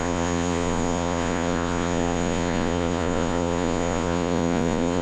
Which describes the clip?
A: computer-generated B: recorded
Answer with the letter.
A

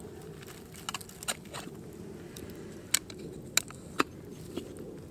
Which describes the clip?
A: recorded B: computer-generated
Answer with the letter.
A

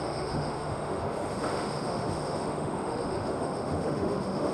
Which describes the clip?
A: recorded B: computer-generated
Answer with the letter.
B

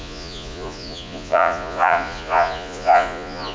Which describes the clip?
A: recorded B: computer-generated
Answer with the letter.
B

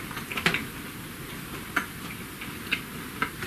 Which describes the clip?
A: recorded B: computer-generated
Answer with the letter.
A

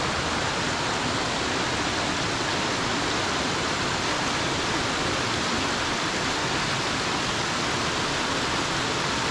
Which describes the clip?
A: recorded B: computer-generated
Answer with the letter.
A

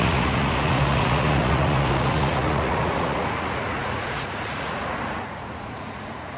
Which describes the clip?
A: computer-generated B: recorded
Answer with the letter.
A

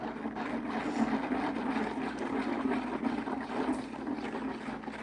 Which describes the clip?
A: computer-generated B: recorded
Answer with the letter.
B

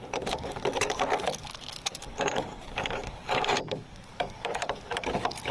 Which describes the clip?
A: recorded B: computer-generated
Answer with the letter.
B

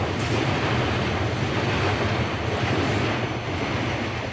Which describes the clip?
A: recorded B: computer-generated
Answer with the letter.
A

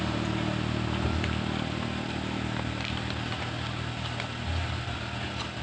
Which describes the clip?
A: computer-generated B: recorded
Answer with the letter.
B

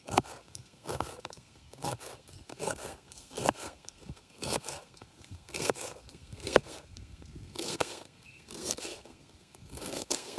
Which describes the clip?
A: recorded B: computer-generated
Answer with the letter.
B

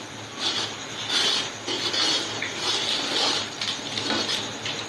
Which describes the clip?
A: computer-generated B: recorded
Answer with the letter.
B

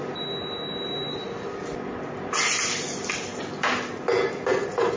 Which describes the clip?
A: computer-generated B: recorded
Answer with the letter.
B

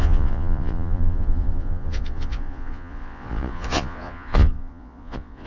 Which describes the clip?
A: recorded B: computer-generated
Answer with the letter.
B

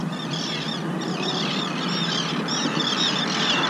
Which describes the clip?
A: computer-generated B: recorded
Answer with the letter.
B